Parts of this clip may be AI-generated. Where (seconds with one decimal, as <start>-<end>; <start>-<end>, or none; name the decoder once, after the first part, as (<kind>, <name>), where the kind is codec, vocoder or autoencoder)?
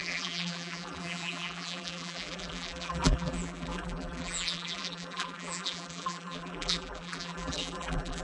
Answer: 0.0-8.2 (vocoder, BigVGAN v2)